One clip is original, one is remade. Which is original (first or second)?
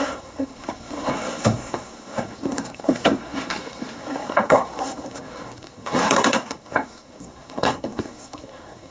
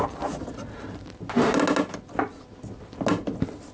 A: second